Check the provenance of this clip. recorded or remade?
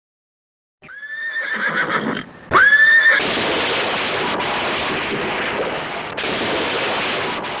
recorded